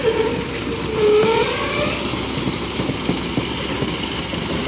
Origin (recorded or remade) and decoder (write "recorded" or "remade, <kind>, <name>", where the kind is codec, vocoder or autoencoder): recorded